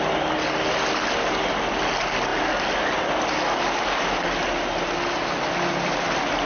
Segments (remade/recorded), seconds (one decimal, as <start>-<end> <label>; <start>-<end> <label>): 0.0-6.5 recorded